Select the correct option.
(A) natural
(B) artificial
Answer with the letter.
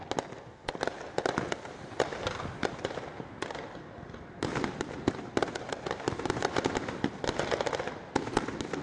A